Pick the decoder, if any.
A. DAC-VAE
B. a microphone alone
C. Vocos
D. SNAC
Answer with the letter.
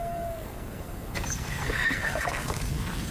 D